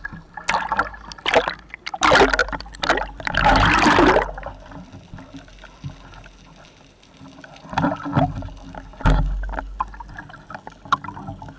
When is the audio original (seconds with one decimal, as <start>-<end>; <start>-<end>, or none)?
0.0-2.4; 4.9-11.6